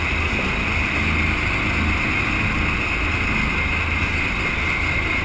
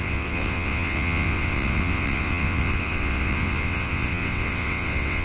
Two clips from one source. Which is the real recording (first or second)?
first